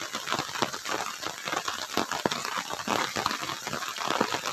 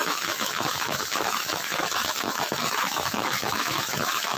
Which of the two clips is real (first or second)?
first